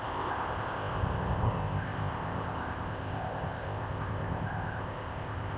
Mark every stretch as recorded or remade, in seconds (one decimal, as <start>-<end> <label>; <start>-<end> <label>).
0.0-5.6 remade